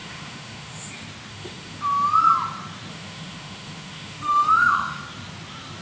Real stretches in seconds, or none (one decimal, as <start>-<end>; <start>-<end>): 0.9-1.3; 1.8-2.9; 5.0-5.8